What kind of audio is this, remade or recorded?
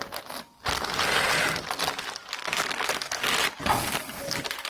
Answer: recorded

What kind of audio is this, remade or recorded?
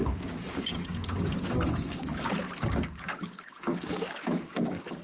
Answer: remade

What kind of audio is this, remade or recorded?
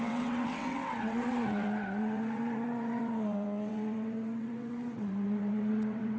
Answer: remade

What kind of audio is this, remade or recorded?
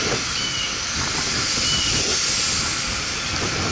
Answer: recorded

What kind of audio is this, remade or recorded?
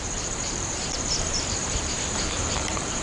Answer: remade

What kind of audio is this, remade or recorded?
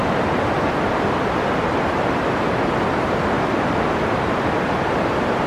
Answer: recorded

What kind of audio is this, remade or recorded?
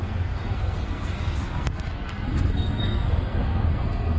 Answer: remade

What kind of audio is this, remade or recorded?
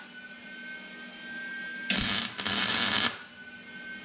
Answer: recorded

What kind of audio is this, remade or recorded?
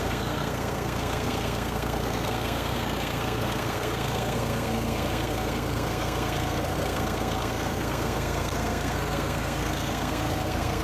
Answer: remade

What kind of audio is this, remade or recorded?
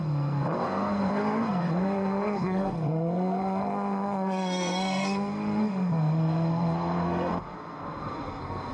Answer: remade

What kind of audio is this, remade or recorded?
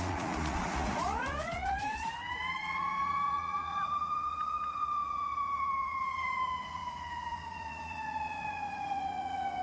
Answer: remade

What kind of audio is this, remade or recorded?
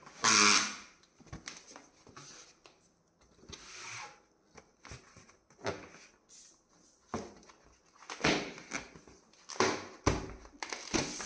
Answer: recorded